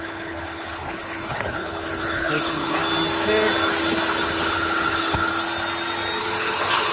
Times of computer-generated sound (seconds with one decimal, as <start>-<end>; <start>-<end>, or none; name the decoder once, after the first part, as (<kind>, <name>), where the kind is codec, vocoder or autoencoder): 0.0-2.8 (codec, HILCodec); 4.2-5.3; 6.2-6.9